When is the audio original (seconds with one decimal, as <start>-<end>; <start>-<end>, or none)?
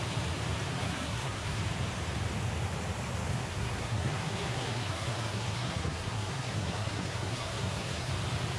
0.0-0.7; 1.6-3.3; 8.1-8.6